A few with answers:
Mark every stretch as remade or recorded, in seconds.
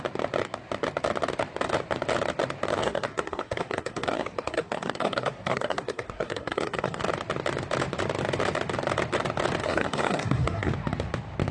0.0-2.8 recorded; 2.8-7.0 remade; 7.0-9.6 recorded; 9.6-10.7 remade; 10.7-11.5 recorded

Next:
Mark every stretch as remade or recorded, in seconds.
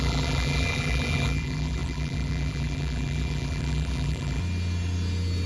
0.0-4.4 remade; 4.4-5.5 recorded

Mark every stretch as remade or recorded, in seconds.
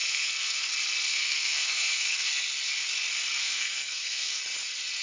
0.0-0.7 remade; 0.7-1.1 recorded; 1.1-2.3 remade; 2.3-3.4 recorded; 3.4-4.4 remade; 4.4-5.0 recorded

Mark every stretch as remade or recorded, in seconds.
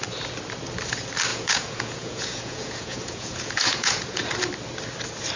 0.0-1.3 recorded; 1.3-4.2 remade; 4.2-5.4 recorded